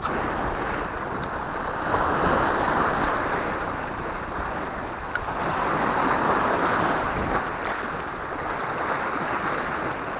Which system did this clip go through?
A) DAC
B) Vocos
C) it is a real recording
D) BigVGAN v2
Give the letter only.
C